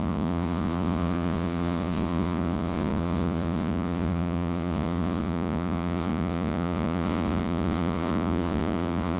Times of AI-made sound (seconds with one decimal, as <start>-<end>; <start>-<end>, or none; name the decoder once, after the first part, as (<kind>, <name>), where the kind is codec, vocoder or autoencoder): 0.0-9.2 (vocoder, Vocos)